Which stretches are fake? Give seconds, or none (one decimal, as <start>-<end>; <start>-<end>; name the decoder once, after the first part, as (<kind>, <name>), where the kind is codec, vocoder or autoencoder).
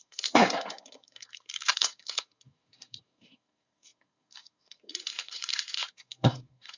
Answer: 0.0-6.8 (codec, SNAC)